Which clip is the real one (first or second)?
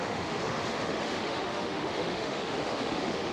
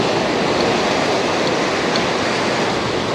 second